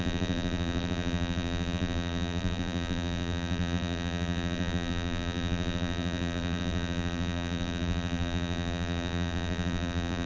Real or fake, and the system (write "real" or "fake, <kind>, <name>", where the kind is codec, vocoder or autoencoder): fake, vocoder, BigVGAN v2